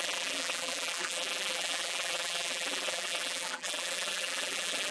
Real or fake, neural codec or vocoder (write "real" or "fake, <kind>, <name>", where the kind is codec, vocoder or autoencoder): fake, vocoder, BigVGAN v2